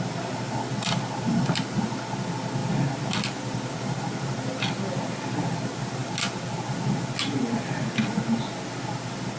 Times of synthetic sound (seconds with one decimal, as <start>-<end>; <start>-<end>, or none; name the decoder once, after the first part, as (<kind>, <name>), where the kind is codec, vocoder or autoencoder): none